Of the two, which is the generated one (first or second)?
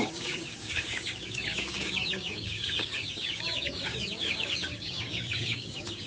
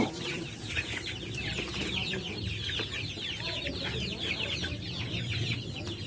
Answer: first